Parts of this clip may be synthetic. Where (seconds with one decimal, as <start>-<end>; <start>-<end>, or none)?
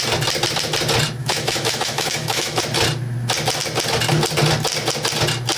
1.2-2.6